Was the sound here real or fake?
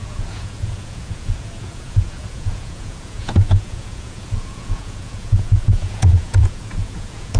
fake